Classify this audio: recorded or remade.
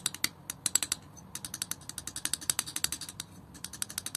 recorded